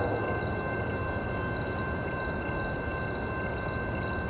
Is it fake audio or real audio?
real